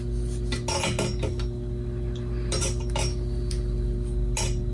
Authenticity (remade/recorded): recorded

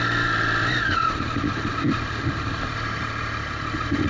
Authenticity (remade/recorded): recorded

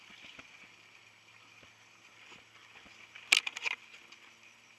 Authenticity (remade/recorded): recorded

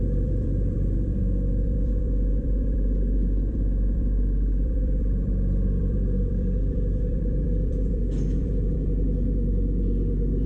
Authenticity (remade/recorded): remade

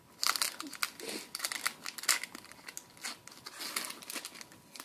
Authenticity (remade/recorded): recorded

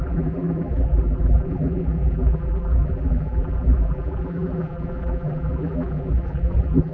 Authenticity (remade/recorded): remade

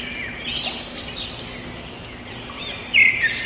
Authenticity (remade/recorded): recorded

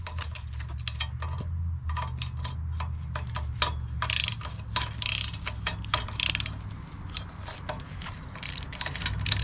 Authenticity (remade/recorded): recorded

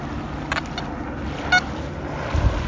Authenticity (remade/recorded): recorded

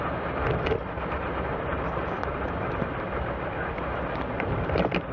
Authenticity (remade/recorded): remade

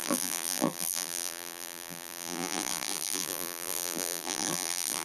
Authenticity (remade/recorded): remade